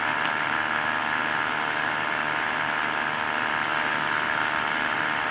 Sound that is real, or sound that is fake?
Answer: real